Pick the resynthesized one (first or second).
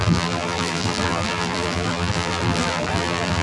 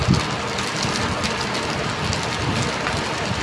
first